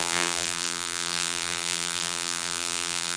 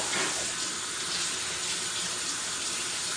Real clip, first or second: second